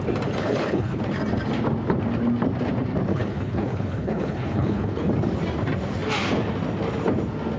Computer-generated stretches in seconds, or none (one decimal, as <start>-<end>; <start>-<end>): 0.4-1.0; 3.1-5.1